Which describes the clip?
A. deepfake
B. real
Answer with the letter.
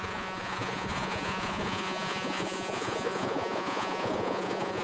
A